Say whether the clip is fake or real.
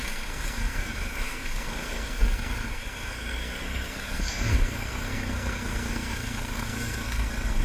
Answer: fake